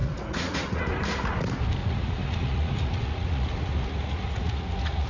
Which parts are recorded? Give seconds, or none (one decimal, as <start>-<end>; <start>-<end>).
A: 0.8-1.8